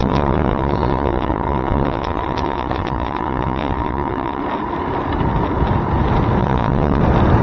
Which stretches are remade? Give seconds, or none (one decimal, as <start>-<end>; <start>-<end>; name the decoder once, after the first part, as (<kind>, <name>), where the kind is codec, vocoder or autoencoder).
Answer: 0.0-4.4 (vocoder, WaveNeXt); 6.4-7.0